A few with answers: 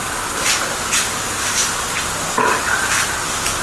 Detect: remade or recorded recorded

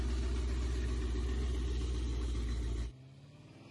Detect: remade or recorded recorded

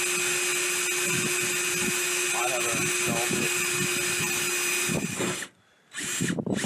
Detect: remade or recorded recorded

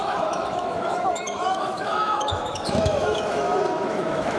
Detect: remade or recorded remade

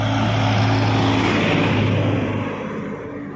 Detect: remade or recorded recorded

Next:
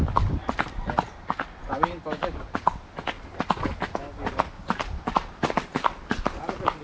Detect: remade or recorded recorded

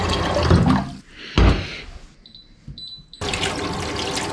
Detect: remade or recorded recorded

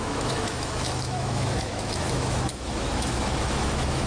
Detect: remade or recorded remade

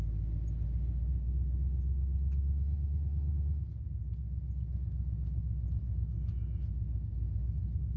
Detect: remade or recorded recorded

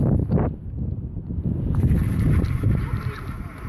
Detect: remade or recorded recorded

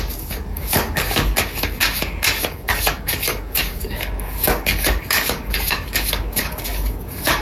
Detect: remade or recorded remade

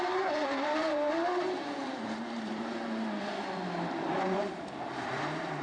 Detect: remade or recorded remade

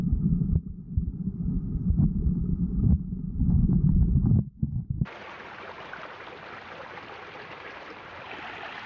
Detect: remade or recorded recorded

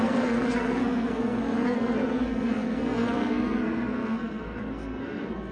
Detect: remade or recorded remade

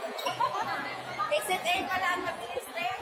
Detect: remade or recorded remade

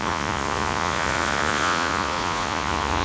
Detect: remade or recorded remade